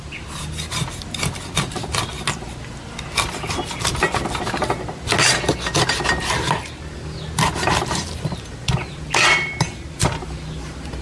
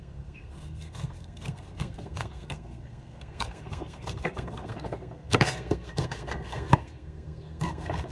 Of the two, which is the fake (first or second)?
second